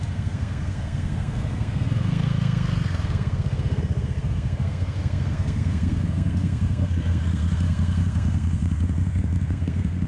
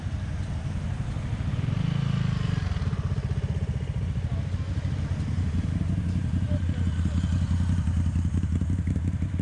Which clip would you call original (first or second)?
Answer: second